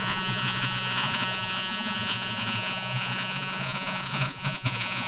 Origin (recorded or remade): remade